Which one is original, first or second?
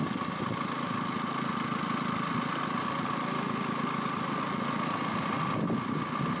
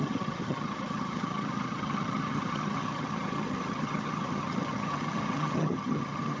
first